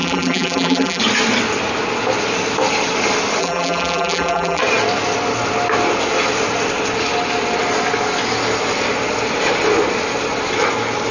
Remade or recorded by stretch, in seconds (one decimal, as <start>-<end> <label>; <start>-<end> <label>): 0.0-1.0 remade; 1.0-3.4 recorded; 3.4-4.6 remade; 4.6-11.1 recorded